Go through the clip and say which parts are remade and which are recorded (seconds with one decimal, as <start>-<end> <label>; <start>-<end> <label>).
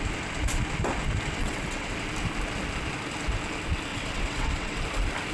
0.0-1.4 recorded; 1.4-1.9 remade; 1.9-3.9 recorded; 3.9-4.8 remade; 4.8-5.3 recorded